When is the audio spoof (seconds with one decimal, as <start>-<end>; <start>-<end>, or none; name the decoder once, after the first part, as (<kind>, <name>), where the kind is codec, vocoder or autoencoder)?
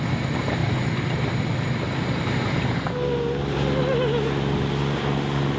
none